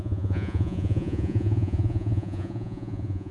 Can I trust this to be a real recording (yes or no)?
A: no